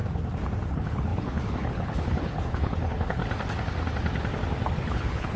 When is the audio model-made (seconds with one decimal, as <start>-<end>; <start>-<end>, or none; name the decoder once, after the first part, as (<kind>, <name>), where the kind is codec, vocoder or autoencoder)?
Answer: 0.7-3.2 (codec, HILCodec); 4.7-5.4